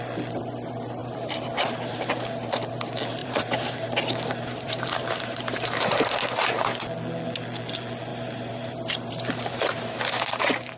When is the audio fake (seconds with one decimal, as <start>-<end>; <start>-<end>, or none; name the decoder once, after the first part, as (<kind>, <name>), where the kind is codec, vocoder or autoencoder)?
1.0-2.7 (vocoder, BigVGAN v2); 3.2-6.1; 8.1-10.8